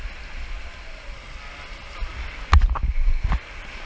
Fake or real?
real